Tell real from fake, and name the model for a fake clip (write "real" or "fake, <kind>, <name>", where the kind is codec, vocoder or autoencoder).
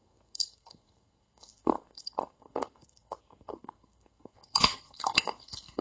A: fake, codec, SNAC